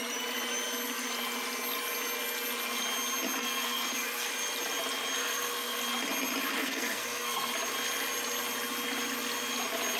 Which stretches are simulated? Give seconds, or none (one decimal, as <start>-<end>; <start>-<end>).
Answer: 3.4-4.3; 5.2-5.8; 6.6-7.5